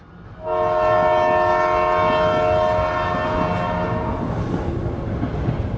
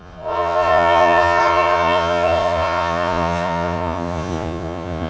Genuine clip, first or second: first